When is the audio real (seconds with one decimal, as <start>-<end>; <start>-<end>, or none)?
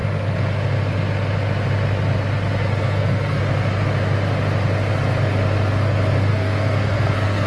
0.0-2.6; 3.4-6.3